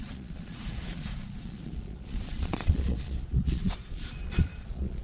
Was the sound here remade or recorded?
remade